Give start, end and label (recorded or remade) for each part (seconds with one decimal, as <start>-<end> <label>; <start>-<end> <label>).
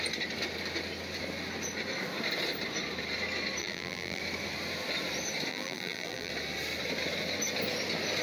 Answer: 0.0-3.6 recorded; 3.6-4.2 remade; 4.2-5.5 recorded; 5.5-6.3 remade; 6.3-8.2 recorded